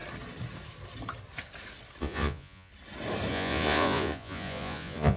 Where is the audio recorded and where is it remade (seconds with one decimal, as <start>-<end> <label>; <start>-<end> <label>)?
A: 0.0-2.0 recorded; 2.0-2.7 remade; 2.7-3.3 recorded; 3.3-5.2 remade